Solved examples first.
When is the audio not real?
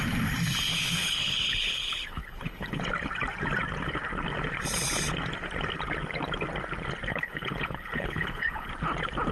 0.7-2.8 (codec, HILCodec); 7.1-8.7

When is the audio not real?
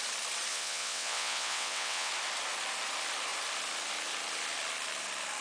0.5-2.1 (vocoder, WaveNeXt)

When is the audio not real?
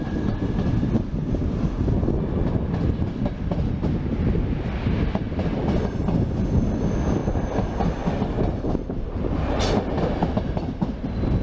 none